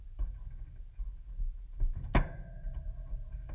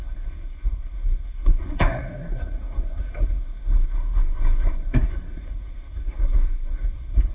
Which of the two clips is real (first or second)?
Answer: first